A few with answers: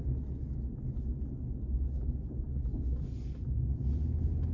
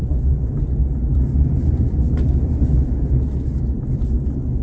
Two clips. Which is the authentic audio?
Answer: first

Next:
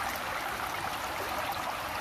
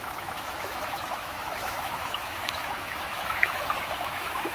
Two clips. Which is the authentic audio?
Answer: first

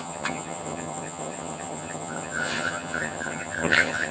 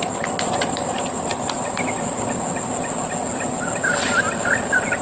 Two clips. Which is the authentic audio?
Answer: second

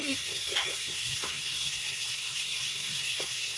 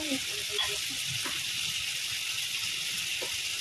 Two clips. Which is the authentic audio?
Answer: second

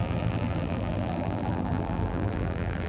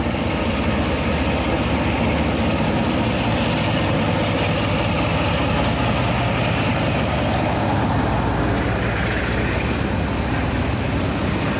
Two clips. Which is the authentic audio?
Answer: second